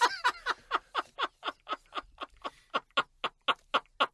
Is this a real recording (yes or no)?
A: yes